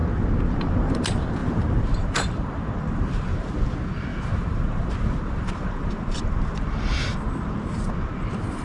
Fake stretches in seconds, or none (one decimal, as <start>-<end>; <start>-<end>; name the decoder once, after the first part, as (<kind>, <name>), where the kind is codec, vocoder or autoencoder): 0.0-1.0 (vocoder, BigVGAN v2); 1.4-3.6; 4.1-6.2